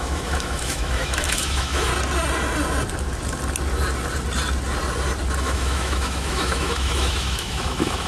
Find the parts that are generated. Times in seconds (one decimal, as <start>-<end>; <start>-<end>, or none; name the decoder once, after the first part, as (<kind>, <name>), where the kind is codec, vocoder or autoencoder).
0.0-1.9 (autoencoder, DAC-VAE); 5.4-8.1